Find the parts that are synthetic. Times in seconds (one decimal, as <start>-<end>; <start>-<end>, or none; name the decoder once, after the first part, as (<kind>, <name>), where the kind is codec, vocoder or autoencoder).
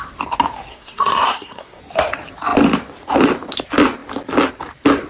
0.7-1.8 (codec, SNAC)